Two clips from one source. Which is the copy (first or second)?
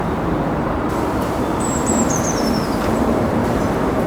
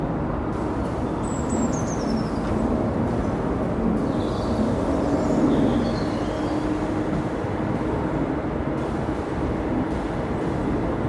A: first